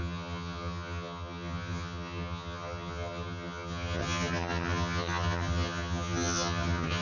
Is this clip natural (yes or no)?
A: no